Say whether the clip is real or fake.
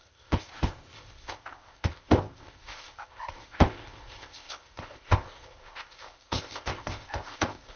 fake